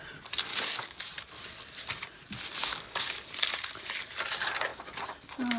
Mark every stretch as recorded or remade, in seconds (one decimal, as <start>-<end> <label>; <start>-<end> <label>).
0.0-0.5 recorded; 0.5-1.0 remade; 1.0-2.6 recorded; 2.6-3.3 remade; 3.3-5.6 recorded